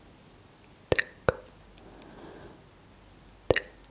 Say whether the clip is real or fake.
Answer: real